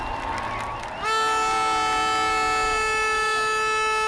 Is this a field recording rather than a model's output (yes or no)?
yes